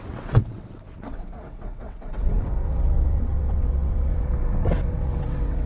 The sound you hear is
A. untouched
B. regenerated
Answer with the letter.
B